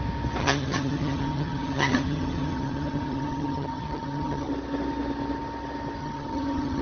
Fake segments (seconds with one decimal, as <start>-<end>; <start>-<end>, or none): 0.4-4.5; 6.0-6.8